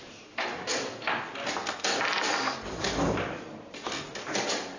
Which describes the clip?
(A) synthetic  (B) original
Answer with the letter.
B